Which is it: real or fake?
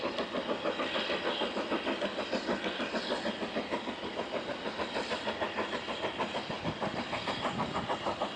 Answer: real